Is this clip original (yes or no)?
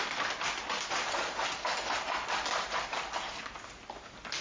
yes